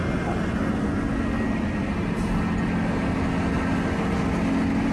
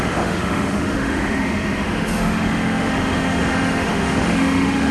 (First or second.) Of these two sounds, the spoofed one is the second